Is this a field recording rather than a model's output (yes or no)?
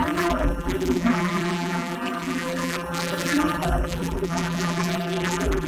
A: no